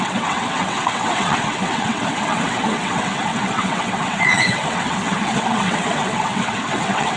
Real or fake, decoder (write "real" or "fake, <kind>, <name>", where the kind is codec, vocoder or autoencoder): fake, vocoder, WaveNeXt